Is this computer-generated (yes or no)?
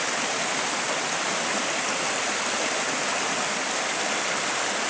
no